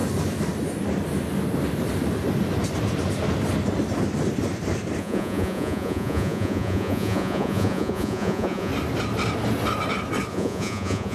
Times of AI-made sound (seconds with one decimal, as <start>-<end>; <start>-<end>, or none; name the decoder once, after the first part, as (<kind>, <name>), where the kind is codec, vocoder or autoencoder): 5.0-8.7 (vocoder, Vocos); 10.3-11.1